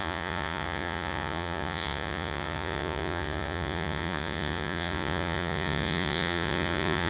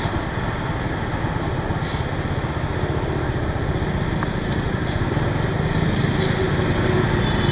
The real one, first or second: second